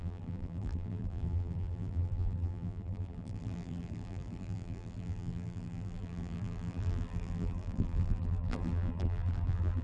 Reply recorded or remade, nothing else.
remade